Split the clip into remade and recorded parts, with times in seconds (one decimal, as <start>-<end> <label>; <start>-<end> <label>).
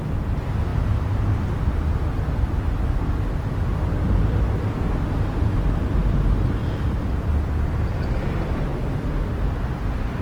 0.0-10.2 recorded